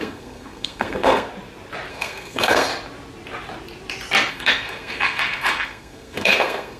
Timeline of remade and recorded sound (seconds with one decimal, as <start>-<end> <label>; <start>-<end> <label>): 0.0-1.3 remade; 1.3-1.9 recorded; 1.9-2.7 remade; 2.7-4.3 recorded; 4.3-6.8 remade